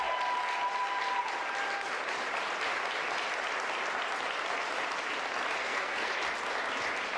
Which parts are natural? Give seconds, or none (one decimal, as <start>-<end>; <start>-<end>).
0.0-5.6; 6.1-7.2